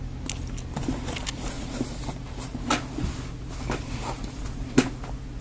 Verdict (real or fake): real